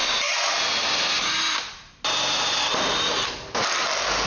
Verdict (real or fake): real